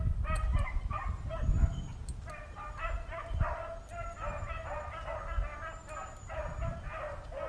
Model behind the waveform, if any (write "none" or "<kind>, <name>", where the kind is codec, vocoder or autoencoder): none